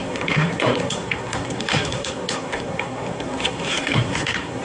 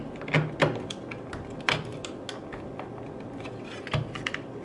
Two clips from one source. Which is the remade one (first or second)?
first